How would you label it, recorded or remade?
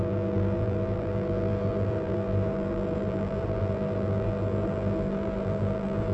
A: remade